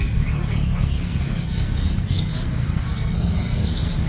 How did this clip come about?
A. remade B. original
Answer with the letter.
A